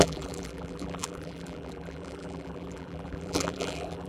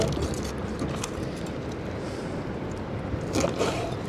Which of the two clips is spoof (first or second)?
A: first